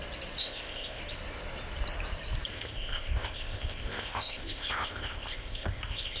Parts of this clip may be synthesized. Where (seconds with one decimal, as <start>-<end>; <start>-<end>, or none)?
0.4-1.0; 2.5-6.2